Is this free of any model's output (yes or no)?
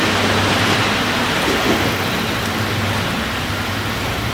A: yes